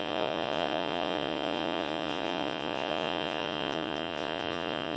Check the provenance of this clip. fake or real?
fake